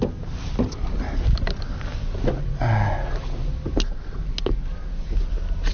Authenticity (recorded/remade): recorded